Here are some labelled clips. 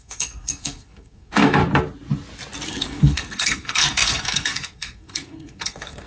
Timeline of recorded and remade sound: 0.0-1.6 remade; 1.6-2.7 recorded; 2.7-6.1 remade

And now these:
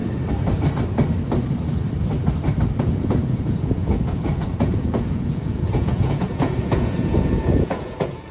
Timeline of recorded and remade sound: 0.0-2.8 recorded; 2.8-8.3 remade

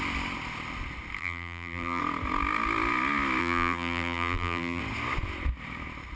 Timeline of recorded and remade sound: 0.0-1.2 recorded; 1.2-2.0 remade; 2.0-3.4 recorded; 3.4-4.8 remade; 4.8-6.2 recorded

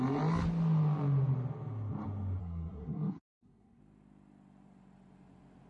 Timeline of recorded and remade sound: 0.0-2.4 recorded; 2.4-3.8 remade; 3.8-5.7 recorded

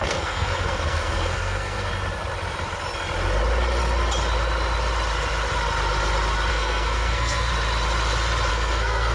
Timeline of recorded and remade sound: 0.0-1.9 remade; 1.9-6.5 recorded; 6.5-7.5 remade; 7.5-8.5 recorded; 8.5-9.1 remade

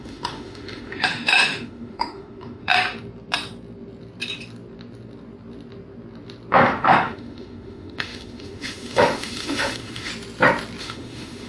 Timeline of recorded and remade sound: 0.0-2.7 remade; 2.7-6.5 recorded; 6.5-10.1 remade; 10.1-10.8 recorded; 10.8-11.5 remade

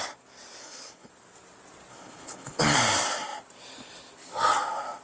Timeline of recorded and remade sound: 0.0-0.6 recorded; 0.6-1.1 remade; 1.1-1.9 recorded; 1.9-2.6 remade; 2.6-5.0 recorded